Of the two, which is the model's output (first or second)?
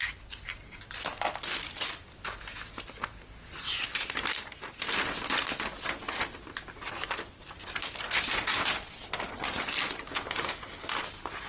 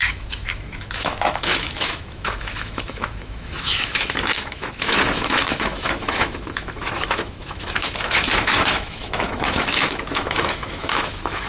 second